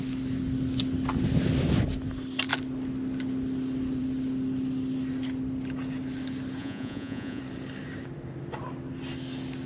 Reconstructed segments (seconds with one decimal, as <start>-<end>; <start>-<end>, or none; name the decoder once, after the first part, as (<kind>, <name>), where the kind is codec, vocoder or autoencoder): 6.6-7.4 (vocoder, Vocos)